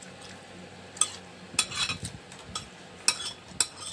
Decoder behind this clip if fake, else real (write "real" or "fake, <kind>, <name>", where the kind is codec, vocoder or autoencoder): real